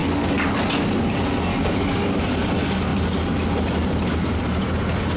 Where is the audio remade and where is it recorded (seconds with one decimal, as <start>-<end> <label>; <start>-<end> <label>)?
0.0-0.6 remade; 0.6-1.5 recorded; 1.5-2.2 remade; 2.2-5.2 recorded